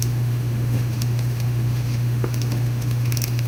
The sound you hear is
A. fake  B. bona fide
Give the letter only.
A